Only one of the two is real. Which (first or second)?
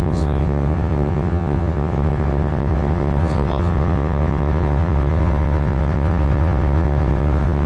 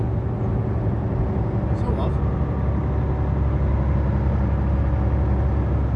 second